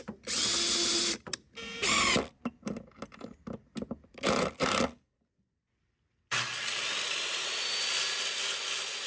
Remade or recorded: recorded